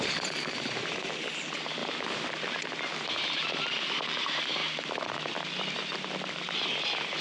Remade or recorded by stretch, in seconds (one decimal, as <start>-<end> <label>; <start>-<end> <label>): 0.0-1.8 remade; 1.8-3.7 recorded; 3.7-4.6 remade; 4.6-7.2 recorded